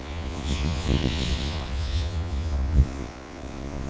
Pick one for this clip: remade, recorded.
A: remade